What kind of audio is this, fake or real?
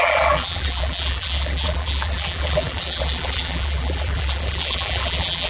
fake